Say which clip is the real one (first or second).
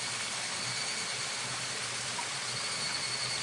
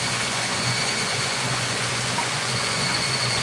first